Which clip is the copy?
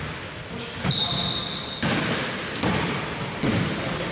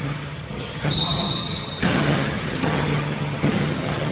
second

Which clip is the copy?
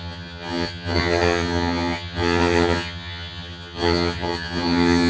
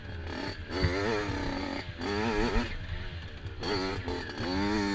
first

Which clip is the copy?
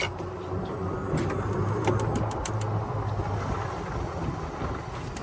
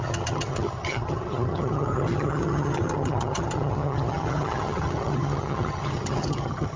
second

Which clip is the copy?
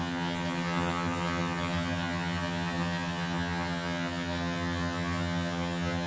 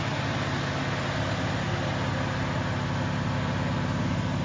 first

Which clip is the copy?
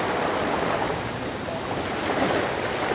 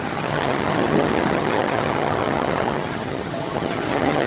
second